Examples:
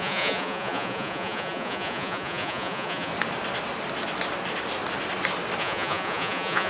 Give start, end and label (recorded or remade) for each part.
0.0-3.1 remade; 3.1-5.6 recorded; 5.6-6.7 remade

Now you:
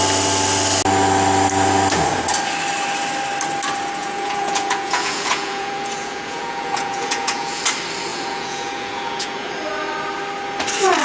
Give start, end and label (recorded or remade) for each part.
0.0-4.0 recorded; 4.0-7.6 remade; 7.6-8.1 recorded; 8.1-9.5 remade; 9.5-11.0 recorded

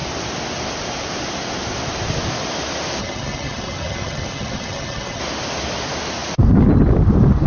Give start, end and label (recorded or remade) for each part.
0.0-3.0 recorded; 3.0-5.2 remade; 5.2-7.5 recorded

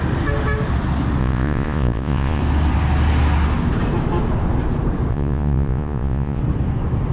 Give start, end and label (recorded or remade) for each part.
0.0-1.2 recorded; 1.2-2.4 remade; 2.4-5.1 recorded; 5.1-6.4 remade; 6.4-7.1 recorded

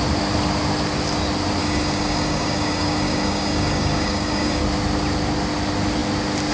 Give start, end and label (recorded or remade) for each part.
0.0-1.6 recorded; 1.6-4.6 remade; 4.6-6.5 recorded